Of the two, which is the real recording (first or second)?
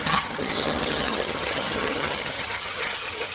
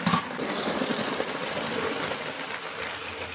second